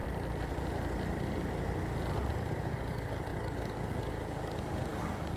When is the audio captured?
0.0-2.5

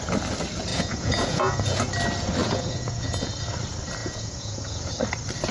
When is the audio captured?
0.0-0.7; 1.8-2.4; 3.3-4.0; 4.9-5.5

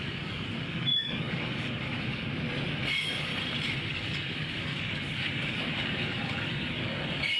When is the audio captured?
2.3-2.9; 3.3-3.9

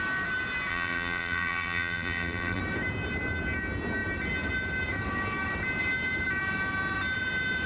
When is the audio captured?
0.0-0.7; 2.6-7.7

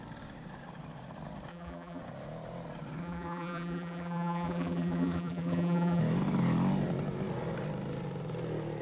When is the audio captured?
0.0-1.5; 2.0-3.0; 6.0-8.8